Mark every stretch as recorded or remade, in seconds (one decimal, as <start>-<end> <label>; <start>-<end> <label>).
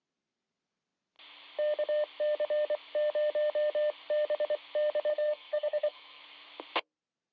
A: 0.0-5.1 recorded; 5.1-6.2 remade; 6.2-7.3 recorded